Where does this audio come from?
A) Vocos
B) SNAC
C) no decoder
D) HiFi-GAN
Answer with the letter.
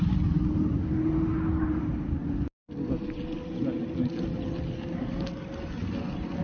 C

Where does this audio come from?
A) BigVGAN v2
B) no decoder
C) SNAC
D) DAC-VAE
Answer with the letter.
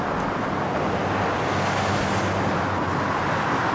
B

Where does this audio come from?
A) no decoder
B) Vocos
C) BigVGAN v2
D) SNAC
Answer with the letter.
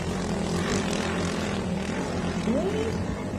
A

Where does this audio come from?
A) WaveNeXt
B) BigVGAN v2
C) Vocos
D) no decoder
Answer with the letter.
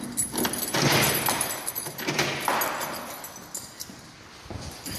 D